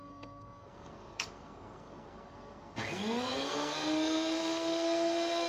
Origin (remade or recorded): remade